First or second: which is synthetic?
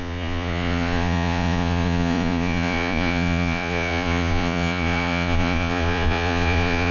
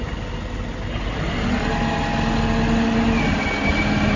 first